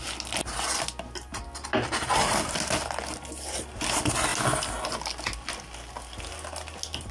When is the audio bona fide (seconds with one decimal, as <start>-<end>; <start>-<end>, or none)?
0.0-7.1